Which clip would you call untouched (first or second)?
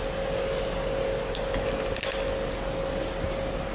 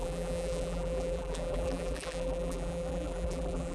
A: first